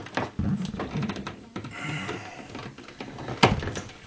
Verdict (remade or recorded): recorded